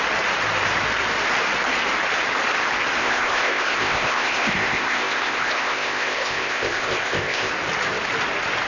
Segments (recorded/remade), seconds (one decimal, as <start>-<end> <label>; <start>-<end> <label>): 0.0-3.0 recorded; 3.0-7.5 remade; 7.5-8.7 recorded